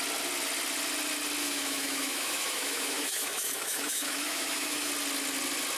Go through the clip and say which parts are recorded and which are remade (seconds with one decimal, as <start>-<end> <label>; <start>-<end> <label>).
0.0-1.4 recorded; 1.4-4.9 remade; 4.9-5.8 recorded